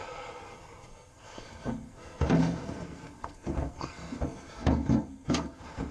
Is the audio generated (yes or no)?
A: yes